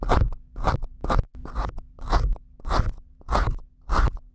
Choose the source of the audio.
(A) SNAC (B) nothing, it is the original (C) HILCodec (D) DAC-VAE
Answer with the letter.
B